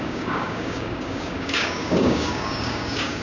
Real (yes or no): no